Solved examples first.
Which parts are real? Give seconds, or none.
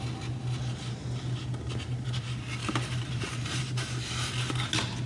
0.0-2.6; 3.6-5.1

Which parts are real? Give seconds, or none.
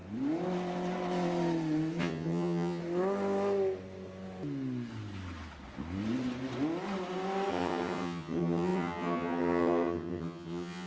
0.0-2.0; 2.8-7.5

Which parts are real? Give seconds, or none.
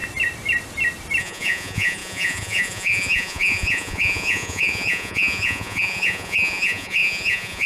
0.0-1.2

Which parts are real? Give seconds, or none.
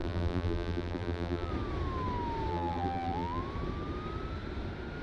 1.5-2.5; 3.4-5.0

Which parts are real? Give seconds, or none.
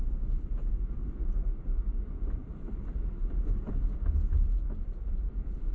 0.0-2.5; 3.6-5.7